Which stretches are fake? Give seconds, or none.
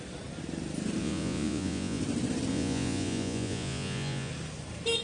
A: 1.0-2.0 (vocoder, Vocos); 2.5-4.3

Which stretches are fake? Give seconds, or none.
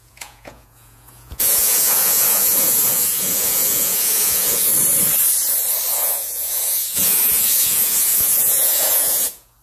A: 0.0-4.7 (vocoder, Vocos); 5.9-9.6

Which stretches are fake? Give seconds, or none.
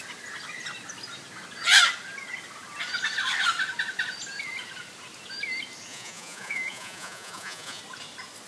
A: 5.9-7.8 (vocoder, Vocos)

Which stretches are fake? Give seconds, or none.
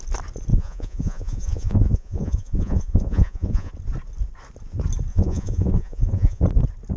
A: 0.5-3.7 (vocoder, Vocos); 5.1-6.4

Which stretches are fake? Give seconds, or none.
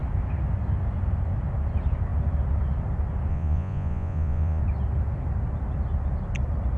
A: 3.3-4.6 (vocoder, Vocos)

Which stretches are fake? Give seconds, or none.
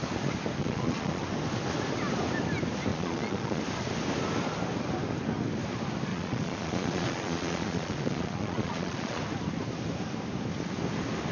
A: 0.6-1.2 (vocoder, Vocos); 2.9-3.6; 6.1-9.2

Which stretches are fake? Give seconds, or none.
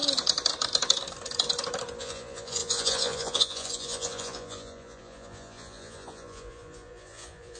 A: 2.0-7.6 (vocoder, Vocos)